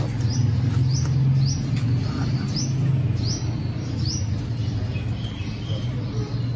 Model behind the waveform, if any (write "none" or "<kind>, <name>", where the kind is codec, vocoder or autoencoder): none